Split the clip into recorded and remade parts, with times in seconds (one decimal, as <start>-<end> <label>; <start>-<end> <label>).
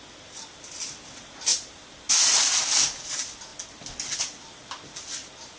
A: 0.0-5.6 recorded